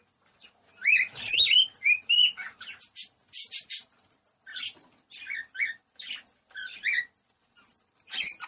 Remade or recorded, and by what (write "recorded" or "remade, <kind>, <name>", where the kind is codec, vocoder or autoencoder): recorded